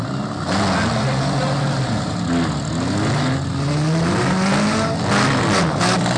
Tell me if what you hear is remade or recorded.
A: recorded